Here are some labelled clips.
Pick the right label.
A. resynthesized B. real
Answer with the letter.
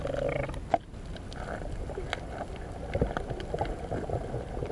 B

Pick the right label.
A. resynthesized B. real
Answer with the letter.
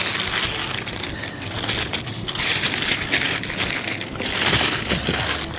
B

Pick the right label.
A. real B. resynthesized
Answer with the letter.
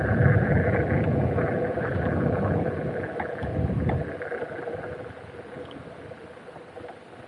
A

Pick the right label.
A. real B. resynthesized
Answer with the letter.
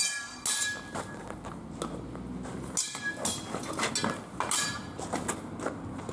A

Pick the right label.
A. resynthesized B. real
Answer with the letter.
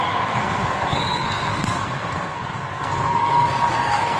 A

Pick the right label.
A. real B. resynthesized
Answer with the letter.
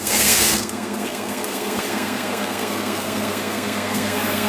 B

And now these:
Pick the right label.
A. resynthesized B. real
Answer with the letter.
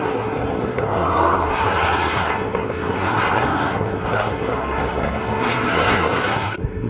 A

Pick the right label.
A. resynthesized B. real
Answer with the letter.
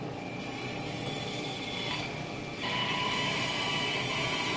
B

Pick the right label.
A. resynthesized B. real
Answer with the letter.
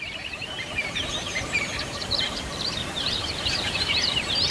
A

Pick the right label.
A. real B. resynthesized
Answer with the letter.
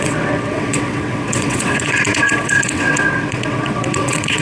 B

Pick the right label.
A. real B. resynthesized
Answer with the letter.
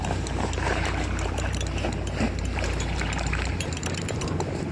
B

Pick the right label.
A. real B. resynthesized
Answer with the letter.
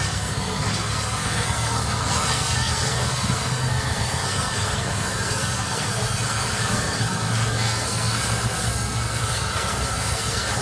B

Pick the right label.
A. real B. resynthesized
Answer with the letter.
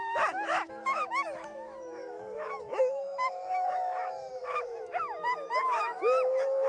B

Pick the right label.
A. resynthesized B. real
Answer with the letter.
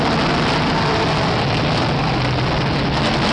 B